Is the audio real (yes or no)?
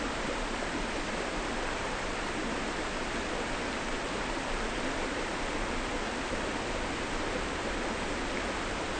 yes